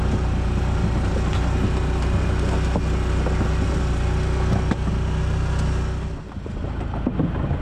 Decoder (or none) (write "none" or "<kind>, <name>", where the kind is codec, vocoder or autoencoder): none